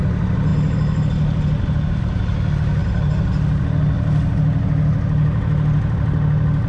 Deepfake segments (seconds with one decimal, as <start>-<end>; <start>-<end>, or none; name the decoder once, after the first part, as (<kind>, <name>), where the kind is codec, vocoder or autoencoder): none